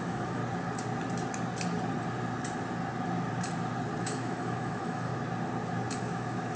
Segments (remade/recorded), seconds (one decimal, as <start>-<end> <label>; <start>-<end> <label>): 0.0-0.4 remade; 0.4-4.0 recorded; 4.0-5.1 remade; 5.1-6.0 recorded; 6.0-6.6 remade